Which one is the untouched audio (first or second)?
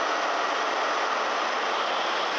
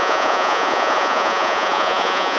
first